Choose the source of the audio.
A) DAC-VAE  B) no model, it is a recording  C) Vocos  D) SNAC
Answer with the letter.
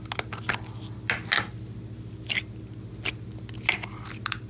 B